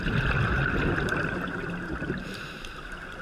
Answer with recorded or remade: recorded